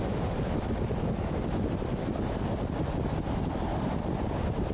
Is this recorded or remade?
recorded